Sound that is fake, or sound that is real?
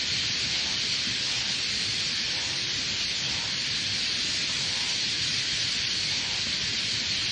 real